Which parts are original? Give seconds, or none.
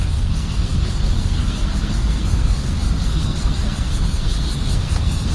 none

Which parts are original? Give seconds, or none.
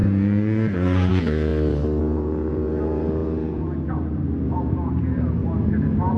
1.5-2.0